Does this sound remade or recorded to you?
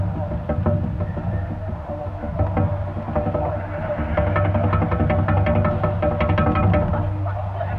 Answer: recorded